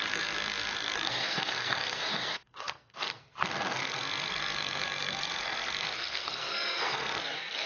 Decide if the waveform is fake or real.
fake